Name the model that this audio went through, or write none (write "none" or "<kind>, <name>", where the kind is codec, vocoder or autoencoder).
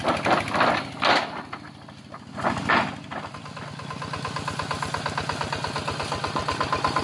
none